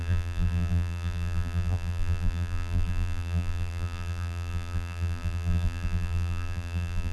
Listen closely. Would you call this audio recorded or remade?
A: remade